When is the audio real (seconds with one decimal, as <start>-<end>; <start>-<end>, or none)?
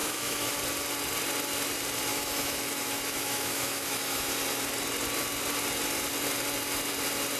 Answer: 0.5-2.1; 4.3-7.4